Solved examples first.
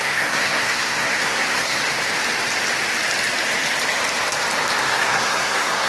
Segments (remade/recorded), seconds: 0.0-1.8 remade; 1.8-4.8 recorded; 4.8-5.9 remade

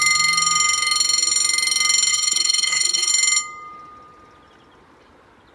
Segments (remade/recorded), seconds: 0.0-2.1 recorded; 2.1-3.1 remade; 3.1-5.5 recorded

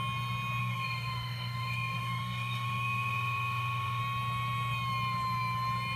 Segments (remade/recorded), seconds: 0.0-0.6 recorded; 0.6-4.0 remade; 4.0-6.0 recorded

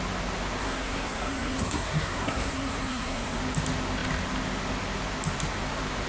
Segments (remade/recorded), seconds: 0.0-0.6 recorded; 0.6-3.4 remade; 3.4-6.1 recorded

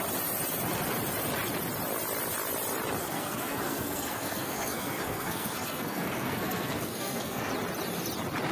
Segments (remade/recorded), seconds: 0.0-3.0 recorded; 3.0-7.5 remade; 7.5-8.5 recorded